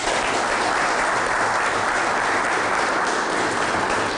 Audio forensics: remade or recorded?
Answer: recorded